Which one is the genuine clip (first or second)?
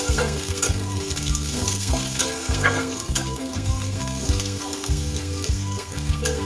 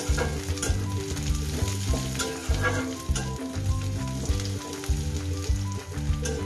second